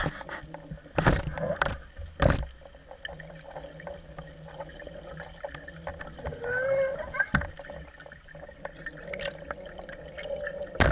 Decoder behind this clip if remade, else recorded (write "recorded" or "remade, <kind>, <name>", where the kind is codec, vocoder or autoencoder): recorded